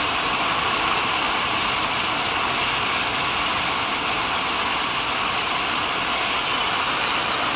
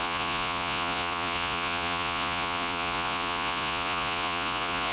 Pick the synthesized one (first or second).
second